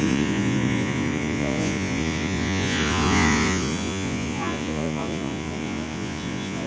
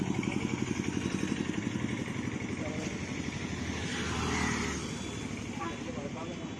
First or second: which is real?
second